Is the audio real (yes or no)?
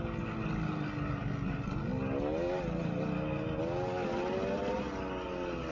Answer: yes